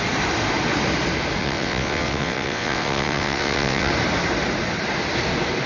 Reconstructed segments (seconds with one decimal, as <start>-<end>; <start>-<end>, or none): 1.4-3.9